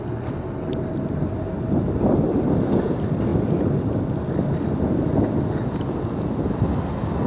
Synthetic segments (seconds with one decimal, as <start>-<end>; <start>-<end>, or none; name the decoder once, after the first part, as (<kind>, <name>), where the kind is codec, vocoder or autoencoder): none